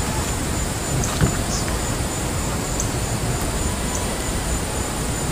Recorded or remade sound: remade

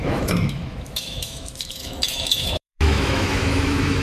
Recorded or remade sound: remade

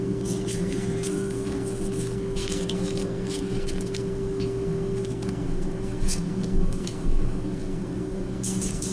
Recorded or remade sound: remade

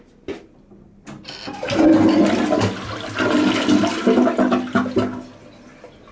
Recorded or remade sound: recorded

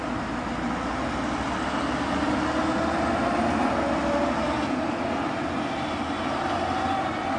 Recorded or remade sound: recorded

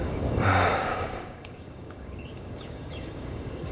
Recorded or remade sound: remade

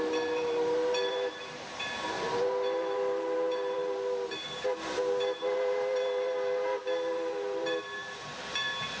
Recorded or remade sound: remade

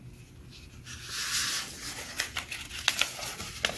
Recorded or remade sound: recorded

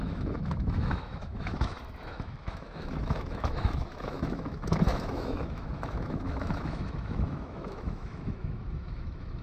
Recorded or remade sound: remade